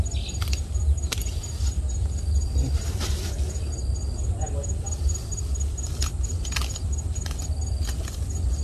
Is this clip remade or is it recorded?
recorded